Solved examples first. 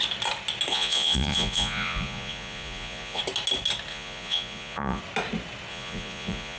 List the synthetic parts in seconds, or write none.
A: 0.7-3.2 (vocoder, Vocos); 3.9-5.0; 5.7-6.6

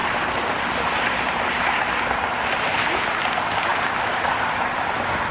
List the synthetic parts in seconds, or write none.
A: 0.0-3.2 (vocoder, BigVGAN v2)

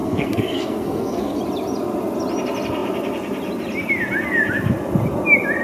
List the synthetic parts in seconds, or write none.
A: 0.0-1.4 (codec, SNAC)

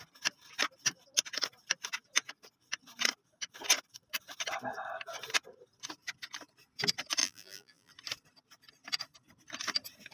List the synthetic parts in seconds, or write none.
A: 7.2-7.9 (vocoder, BigVGAN v2)

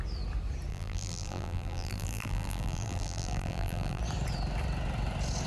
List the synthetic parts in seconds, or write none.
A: 0.7-4.0 (vocoder, BigVGAN v2)

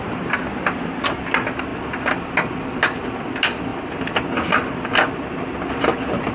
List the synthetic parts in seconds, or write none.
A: none